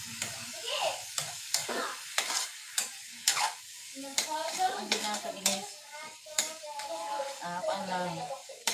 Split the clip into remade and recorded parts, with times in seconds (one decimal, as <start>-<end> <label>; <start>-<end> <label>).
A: 0.0-8.7 remade